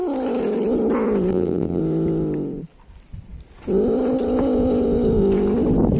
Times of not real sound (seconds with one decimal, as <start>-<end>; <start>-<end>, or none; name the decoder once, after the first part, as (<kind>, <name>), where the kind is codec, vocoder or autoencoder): 1.3-1.8 (vocoder, BigVGAN v2)